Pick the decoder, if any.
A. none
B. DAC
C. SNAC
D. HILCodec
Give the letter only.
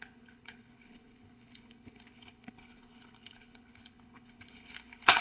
D